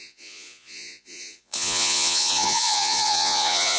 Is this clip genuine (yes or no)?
no